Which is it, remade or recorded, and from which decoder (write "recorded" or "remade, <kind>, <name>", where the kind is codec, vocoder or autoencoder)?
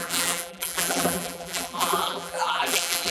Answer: remade, vocoder, BigVGAN v2